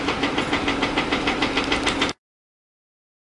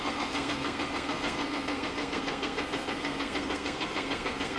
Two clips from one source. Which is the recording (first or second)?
first